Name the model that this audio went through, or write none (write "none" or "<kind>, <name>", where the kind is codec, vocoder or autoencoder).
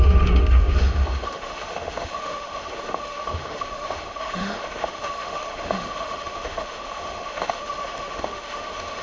autoencoder, DAC-VAE